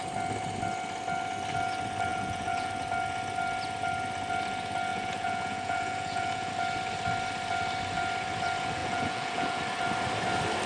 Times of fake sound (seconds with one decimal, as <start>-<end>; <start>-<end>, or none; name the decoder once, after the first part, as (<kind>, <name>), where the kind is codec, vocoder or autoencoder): 2.1-2.7 (vocoder, Vocos); 4.9-6.5; 8.8-9.6